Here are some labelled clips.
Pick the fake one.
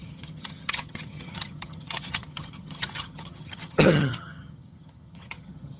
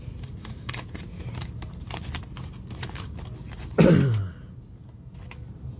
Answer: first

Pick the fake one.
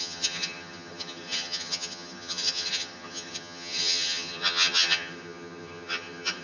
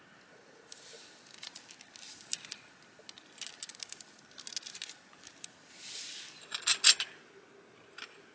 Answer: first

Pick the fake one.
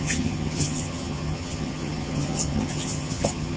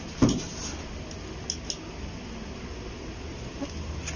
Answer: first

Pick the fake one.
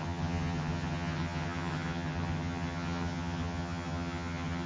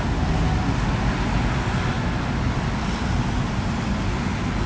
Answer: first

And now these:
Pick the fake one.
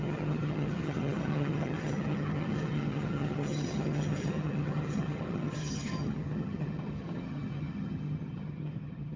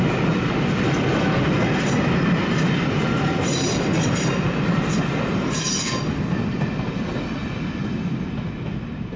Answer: first